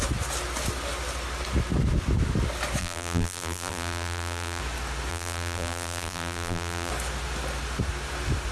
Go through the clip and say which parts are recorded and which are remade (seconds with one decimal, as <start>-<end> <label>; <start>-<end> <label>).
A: 0.0-2.8 recorded; 2.8-4.6 remade; 4.6-5.1 recorded; 5.1-6.9 remade; 6.9-8.5 recorded